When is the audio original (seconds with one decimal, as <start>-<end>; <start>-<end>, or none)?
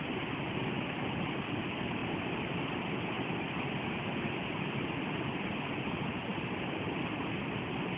0.0-8.0